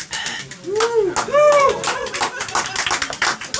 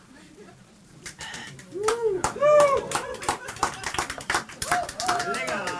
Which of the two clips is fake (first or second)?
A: second